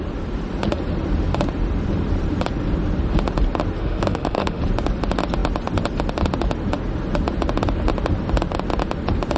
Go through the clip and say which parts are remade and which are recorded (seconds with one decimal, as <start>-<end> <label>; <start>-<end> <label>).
0.0-3.8 recorded; 3.8-4.6 remade; 4.6-9.4 recorded